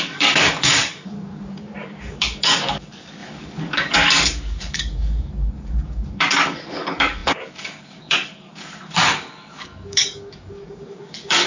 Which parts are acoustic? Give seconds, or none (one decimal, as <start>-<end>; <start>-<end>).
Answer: none